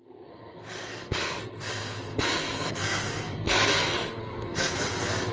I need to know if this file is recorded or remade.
remade